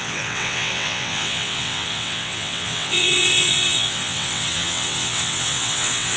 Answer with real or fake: fake